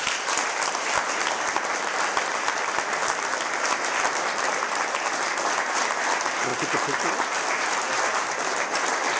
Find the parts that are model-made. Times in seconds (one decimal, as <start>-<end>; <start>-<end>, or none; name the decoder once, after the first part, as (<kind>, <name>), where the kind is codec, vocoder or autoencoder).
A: none